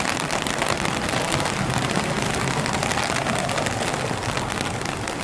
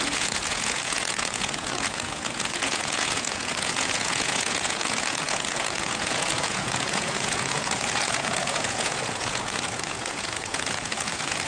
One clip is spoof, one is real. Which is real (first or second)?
first